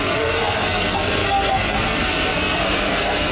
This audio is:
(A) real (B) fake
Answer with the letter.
B